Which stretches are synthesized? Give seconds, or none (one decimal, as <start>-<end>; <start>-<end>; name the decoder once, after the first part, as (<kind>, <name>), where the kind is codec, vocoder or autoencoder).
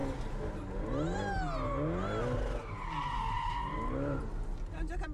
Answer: none